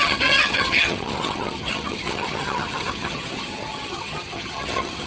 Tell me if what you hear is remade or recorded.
remade